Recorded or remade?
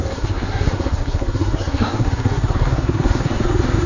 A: remade